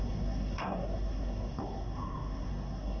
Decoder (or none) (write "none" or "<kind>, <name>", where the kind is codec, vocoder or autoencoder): codec, SNAC